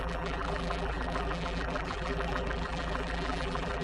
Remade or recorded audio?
remade